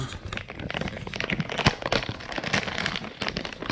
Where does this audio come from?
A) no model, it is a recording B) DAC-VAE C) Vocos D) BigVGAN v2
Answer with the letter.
A